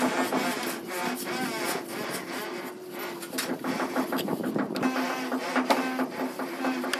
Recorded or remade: recorded